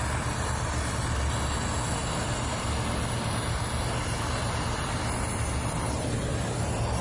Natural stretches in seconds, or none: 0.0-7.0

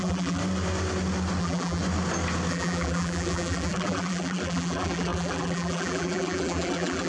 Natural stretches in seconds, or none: 0.4-1.4; 1.8-2.5

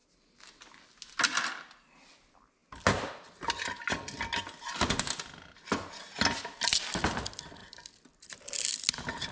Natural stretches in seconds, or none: 0.0-9.3